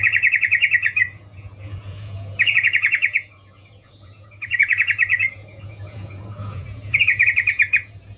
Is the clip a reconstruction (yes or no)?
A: yes